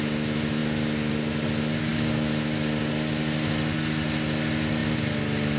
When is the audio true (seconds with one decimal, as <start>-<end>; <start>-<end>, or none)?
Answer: 0.0-5.6